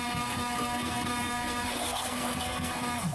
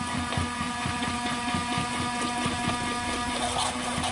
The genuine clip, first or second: second